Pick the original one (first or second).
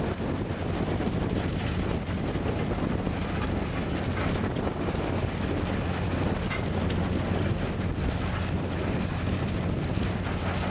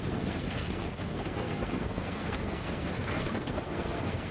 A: first